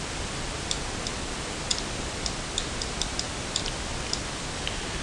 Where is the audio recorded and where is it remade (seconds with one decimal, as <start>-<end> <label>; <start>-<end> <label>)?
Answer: 0.0-5.0 recorded